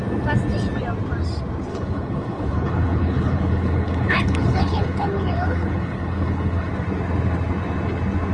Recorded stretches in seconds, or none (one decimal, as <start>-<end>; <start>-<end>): 0.0-1.7; 6.7-8.3